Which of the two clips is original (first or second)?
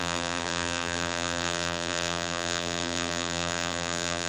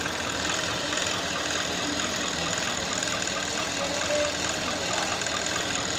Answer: second